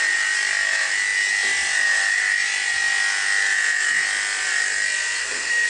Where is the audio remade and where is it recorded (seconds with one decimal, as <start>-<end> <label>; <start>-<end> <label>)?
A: 0.0-5.2 recorded; 5.2-5.7 remade